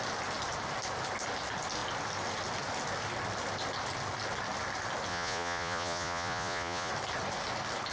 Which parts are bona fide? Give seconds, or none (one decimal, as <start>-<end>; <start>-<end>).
0.0-5.1; 6.9-7.9